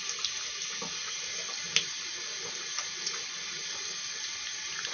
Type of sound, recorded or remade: recorded